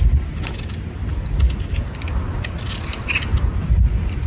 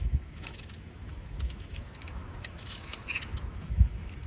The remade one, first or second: second